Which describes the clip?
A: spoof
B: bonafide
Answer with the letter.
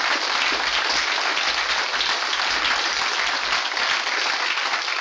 B